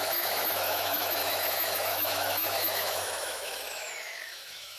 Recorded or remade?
remade